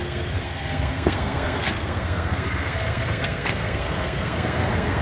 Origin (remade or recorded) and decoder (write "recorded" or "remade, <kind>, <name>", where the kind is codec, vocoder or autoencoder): remade, codec, SNAC